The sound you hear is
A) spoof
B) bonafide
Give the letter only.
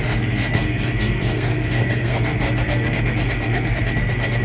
A